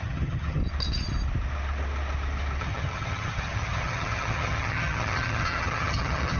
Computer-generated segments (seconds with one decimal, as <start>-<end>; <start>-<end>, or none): 0.0-0.6; 2.6-6.4